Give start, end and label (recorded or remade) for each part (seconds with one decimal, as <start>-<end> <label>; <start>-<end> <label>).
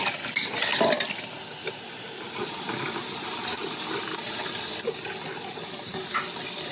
0.0-6.7 remade